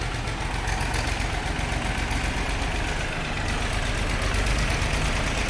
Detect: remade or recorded recorded